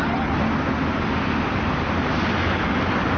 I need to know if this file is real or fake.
real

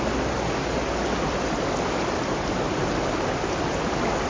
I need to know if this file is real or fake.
real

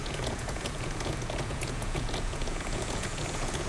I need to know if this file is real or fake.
fake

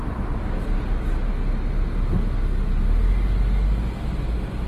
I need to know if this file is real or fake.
real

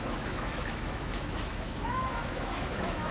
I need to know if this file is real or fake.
fake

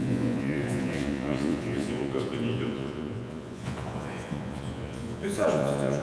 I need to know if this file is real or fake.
fake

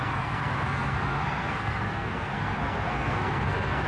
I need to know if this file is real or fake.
fake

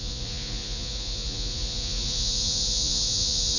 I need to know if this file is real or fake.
fake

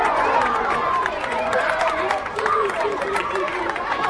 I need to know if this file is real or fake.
fake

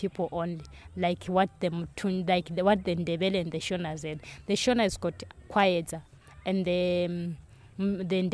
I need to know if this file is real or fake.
real